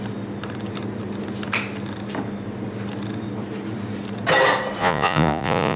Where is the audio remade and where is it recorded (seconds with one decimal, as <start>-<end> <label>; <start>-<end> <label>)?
0.0-4.8 recorded; 4.8-5.8 remade